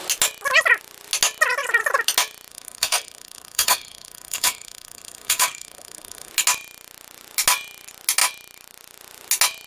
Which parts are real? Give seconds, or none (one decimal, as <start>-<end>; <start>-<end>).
0.0-2.5; 6.3-9.7